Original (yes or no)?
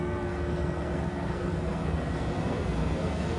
no